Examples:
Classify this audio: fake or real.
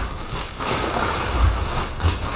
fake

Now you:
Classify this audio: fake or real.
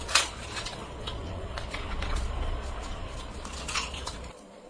fake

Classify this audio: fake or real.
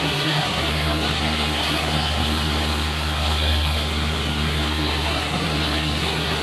fake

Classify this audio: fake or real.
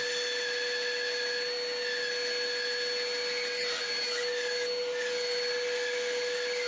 real